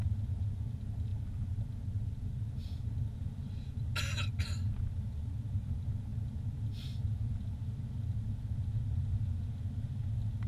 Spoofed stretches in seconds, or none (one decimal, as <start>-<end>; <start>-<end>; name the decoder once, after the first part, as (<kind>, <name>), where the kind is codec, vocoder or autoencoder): none